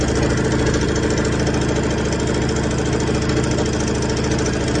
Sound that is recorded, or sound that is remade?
recorded